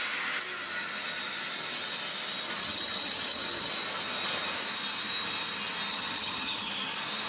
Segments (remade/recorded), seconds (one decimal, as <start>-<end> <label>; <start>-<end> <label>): 0.0-2.6 recorded; 2.6-3.7 remade; 3.7-5.9 recorded; 5.9-6.7 remade; 6.7-7.3 recorded

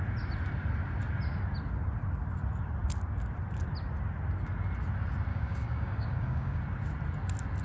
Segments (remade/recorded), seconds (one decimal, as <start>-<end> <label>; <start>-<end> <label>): 0.0-5.3 recorded; 5.3-6.6 remade; 6.6-7.6 recorded

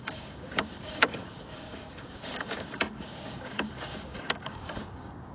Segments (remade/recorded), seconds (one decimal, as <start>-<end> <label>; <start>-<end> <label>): 0.0-5.3 remade

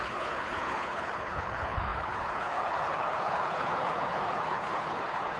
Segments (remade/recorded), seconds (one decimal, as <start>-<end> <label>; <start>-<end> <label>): 0.0-5.4 remade